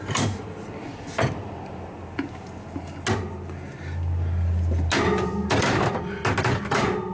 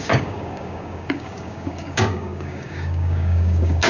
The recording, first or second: first